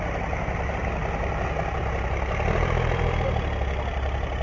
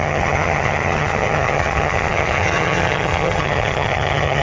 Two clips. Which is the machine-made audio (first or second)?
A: second